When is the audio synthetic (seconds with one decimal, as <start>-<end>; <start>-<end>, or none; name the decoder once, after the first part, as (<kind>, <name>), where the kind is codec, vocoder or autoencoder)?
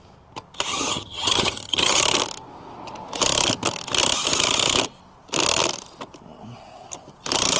0.7-2.0 (vocoder, HiFi-GAN)